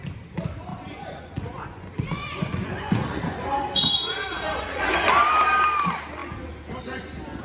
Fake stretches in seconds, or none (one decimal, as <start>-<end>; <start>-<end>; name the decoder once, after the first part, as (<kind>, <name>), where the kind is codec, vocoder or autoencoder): 0.7-5.1 (vocoder, Vocos)